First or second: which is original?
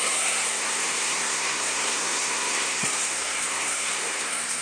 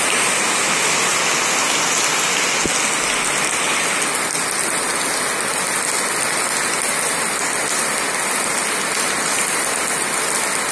second